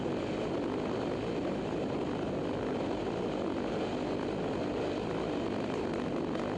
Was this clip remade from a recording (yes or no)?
no